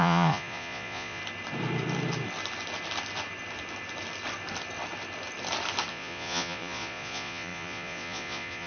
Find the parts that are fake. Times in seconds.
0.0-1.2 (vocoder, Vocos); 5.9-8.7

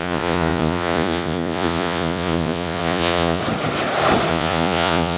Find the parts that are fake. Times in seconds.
0.0-3.4 (vocoder, Vocos); 4.3-5.2

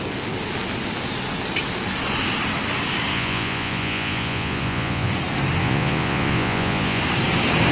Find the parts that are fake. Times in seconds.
3.1-5.1 (vocoder, Vocos); 5.6-7.0

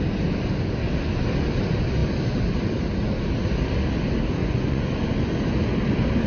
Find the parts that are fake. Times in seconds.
4.4-5.1 (vocoder, Vocos)